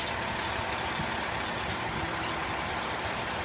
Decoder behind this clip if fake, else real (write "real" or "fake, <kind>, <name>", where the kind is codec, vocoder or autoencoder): real